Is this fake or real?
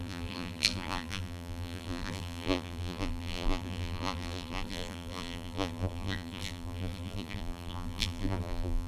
fake